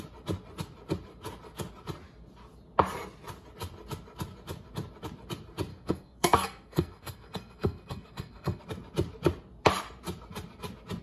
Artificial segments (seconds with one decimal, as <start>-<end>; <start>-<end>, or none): 5.7-8.6